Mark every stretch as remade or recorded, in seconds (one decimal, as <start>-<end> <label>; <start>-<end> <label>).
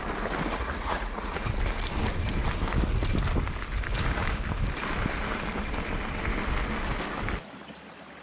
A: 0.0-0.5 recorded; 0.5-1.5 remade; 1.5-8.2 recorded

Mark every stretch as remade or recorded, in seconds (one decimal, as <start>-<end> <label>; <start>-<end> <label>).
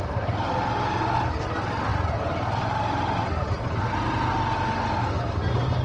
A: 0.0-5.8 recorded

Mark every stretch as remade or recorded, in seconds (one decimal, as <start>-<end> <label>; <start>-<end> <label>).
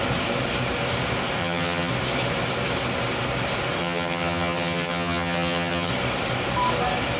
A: 0.0-1.4 recorded; 1.4-1.9 remade; 1.9-3.8 recorded; 3.8-5.9 remade; 5.9-7.2 recorded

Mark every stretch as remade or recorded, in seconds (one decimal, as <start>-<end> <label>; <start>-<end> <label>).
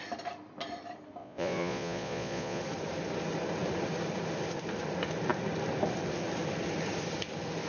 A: 0.0-1.2 recorded; 1.2-2.6 remade; 2.6-7.7 recorded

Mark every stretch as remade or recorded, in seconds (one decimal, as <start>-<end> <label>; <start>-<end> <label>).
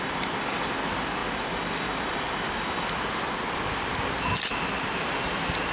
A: 0.0-5.7 recorded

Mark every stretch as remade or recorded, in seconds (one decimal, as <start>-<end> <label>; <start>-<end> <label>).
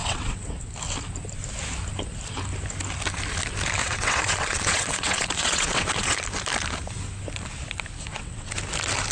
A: 0.0-0.7 remade; 0.7-3.8 recorded; 3.8-6.2 remade; 6.2-8.1 recorded; 8.1-8.6 remade; 8.6-9.1 recorded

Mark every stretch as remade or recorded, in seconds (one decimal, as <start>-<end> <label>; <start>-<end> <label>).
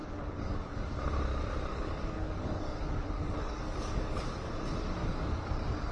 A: 0.0-0.9 remade; 0.9-1.7 recorded; 1.7-4.5 remade; 4.5-5.0 recorded; 5.0-5.5 remade; 5.5-5.9 recorded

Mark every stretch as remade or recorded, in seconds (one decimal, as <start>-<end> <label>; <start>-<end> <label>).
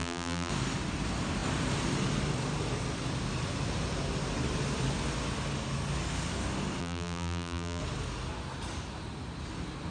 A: 0.0-0.5 remade; 0.5-6.8 recorded; 6.8-7.8 remade; 7.8-9.9 recorded